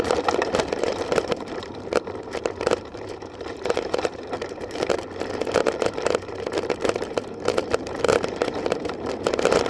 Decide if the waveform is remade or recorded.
remade